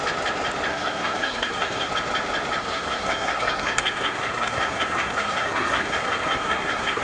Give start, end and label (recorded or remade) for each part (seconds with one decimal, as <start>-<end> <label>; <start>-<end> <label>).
0.0-0.7 recorded; 0.7-1.9 remade; 1.9-2.6 recorded; 2.6-7.0 remade